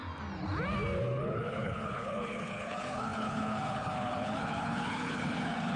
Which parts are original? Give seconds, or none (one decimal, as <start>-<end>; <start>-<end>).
0.0-1.0